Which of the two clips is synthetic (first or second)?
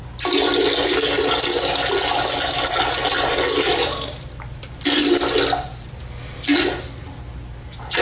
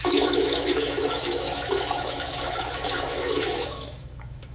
second